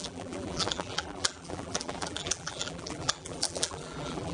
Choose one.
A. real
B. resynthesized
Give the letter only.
B